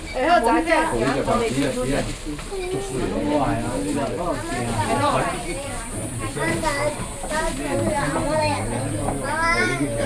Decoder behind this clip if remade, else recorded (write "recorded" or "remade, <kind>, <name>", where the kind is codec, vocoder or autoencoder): recorded